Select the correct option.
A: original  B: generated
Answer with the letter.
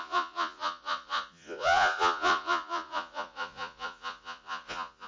B